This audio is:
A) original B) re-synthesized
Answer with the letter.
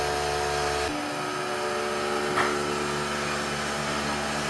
A